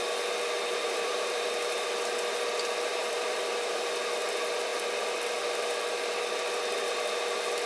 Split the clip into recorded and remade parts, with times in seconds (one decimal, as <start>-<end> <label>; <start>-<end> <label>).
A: 0.0-0.8 recorded; 0.8-1.4 remade; 1.4-2.9 recorded; 2.9-3.9 remade; 3.9-7.7 recorded